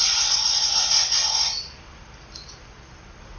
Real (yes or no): yes